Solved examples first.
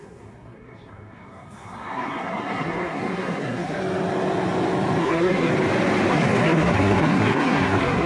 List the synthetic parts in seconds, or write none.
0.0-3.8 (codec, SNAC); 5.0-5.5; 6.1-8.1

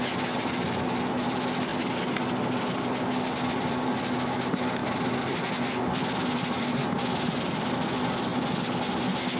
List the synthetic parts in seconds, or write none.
none

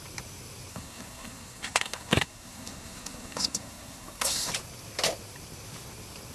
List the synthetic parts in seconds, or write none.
0.7-4.5 (codec, SNAC)

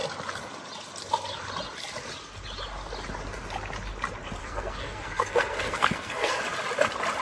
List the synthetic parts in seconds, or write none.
4.4-6.4 (codec, SNAC)

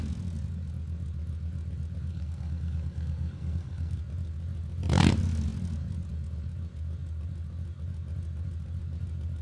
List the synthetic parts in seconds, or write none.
2.1-4.0 (codec, SNAC)

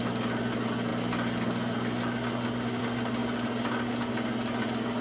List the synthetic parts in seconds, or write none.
none

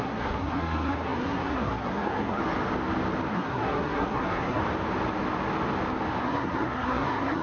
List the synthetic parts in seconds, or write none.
0.0-2.4 (codec, SNAC); 3.3-4.6; 6.2-7.4

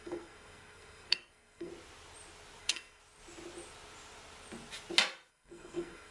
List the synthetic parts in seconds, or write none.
0.0-1.7 (codec, SNAC); 2.6-3.0; 5.3-6.1